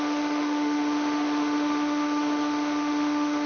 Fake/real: fake